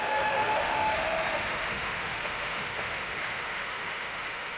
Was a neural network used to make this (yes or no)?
yes